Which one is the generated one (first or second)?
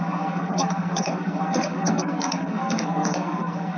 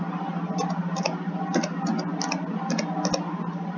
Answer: first